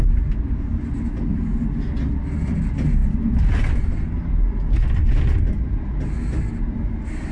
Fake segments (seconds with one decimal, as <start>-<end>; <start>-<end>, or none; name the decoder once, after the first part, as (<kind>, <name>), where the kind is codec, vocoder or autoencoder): none